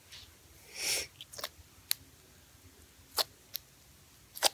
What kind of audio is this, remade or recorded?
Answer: recorded